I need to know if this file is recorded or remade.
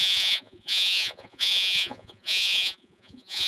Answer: remade